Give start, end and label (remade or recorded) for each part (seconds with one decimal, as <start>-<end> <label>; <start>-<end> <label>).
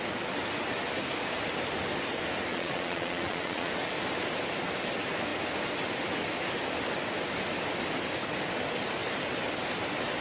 0.0-2.5 recorded; 2.5-3.7 remade; 3.7-10.2 recorded